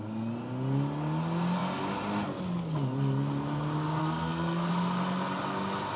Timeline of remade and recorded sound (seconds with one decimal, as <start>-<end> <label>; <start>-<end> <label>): 0.0-4.0 recorded; 4.0-4.7 remade; 4.7-6.0 recorded